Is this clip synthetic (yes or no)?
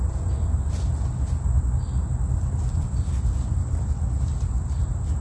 no